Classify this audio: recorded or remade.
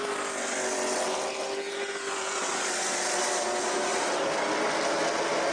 recorded